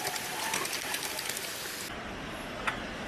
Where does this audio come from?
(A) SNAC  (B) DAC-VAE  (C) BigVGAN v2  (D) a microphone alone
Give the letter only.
D